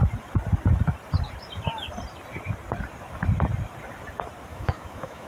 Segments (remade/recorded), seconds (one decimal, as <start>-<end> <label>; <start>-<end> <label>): 0.0-4.5 recorded; 4.5-5.3 remade